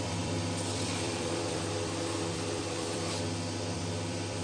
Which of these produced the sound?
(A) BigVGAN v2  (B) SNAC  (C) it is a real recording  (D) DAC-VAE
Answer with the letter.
A